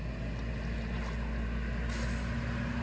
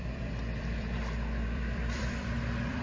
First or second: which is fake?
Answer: second